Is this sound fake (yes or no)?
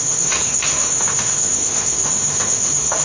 yes